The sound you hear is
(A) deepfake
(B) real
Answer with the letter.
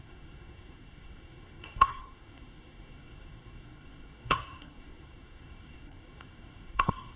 A